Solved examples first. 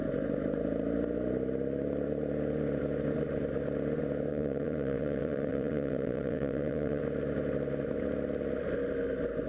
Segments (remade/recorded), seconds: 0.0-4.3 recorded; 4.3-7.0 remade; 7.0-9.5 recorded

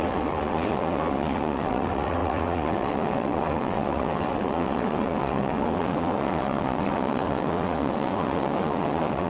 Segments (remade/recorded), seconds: 0.0-9.3 remade

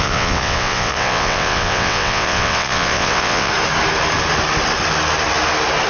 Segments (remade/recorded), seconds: 0.0-3.5 remade; 3.5-5.9 recorded

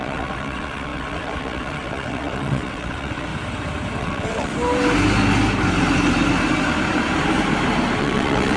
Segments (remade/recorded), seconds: 0.0-3.3 remade; 3.3-4.0 recorded; 4.0-4.5 remade; 4.5-8.0 recorded; 8.0-8.6 remade

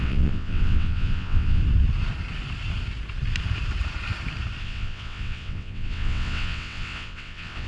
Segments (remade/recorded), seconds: 0.0-1.6 remade; 1.6-4.6 recorded; 4.6-7.7 remade

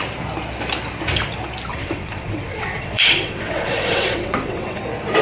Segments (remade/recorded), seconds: 0.0-1.7 recorded; 1.7-4.8 remade; 4.8-5.2 recorded

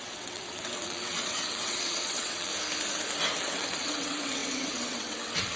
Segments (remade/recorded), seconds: 0.0-2.5 remade; 2.5-3.4 recorded; 3.4-5.6 remade

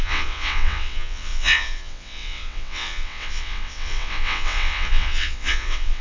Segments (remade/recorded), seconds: 0.0-6.0 remade